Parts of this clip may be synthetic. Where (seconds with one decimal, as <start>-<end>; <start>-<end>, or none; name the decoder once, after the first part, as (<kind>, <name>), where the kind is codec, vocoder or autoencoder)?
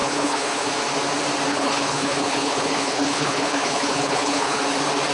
0.0-0.7 (codec, HILCodec); 1.5-4.6